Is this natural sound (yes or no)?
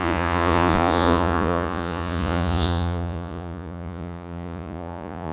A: no